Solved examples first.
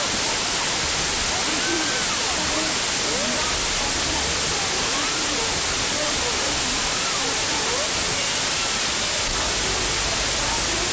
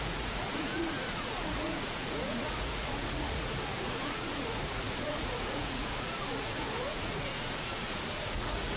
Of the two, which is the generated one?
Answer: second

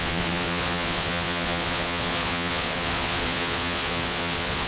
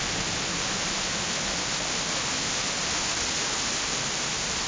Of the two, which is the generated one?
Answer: first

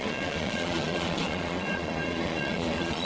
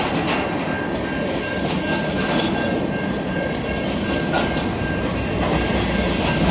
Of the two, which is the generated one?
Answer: first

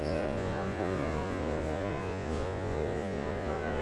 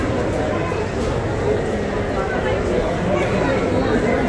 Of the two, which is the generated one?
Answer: first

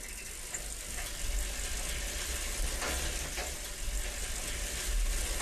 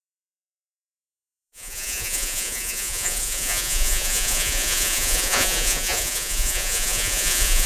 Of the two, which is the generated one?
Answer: second